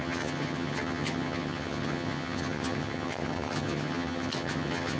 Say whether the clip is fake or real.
fake